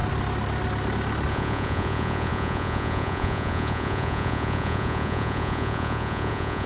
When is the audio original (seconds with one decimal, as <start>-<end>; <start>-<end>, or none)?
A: 0.0-1.3